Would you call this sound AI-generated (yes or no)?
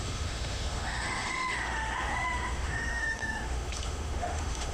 yes